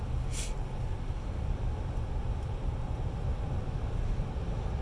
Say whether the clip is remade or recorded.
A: recorded